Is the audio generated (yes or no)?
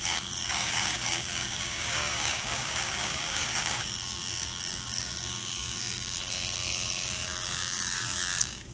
yes